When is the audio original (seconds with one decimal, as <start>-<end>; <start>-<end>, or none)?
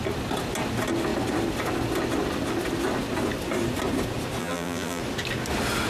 0.0-4.4; 5.0-5.9